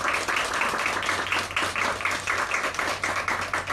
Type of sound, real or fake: real